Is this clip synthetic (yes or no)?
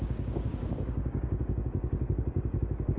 yes